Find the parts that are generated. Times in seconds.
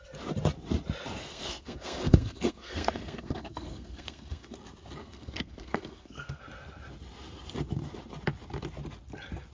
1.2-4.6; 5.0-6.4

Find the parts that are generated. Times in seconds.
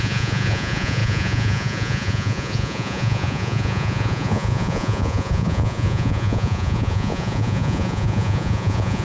0.0-9.0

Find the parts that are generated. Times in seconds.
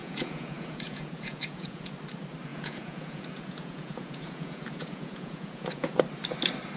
0.0-1.9; 2.5-6.0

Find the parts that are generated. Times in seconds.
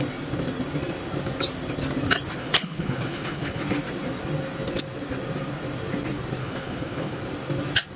2.4-3.6; 6.4-7.2